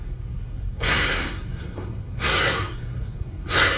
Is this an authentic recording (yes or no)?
no